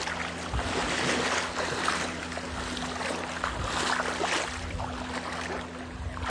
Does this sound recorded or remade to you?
recorded